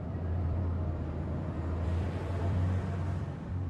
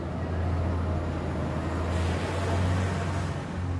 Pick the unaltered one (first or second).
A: second